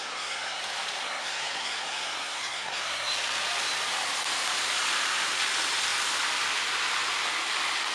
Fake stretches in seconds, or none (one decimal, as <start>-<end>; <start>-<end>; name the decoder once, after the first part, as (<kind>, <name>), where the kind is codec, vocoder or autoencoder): 0.0-0.6 (codec, SNAC); 1.0-3.1